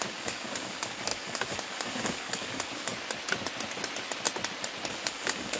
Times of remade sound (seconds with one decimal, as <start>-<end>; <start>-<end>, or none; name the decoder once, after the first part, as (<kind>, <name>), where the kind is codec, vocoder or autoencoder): 0.0-2.9 (codec, DAC); 4.9-5.6